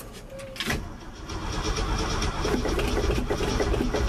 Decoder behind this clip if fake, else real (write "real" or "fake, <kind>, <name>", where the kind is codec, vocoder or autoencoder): real